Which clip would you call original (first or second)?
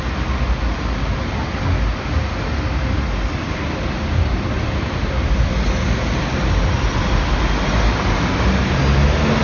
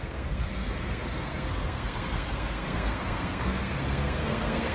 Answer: first